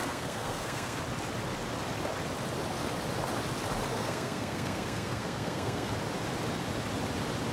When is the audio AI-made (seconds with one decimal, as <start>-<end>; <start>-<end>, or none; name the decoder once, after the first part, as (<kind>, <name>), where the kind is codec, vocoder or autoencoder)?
0.0-1.0 (codec, SNAC); 3.9-5.9